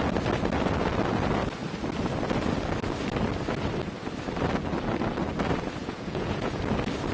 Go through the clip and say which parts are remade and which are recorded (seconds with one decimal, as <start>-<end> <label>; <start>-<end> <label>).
0.0-5.8 recorded; 5.8-6.6 remade; 6.6-7.1 recorded